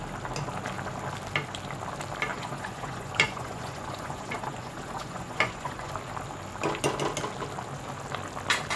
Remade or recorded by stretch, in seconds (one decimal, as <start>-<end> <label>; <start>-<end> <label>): 0.0-2.3 recorded; 2.3-5.9 remade; 5.9-8.8 recorded